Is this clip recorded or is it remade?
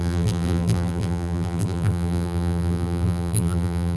remade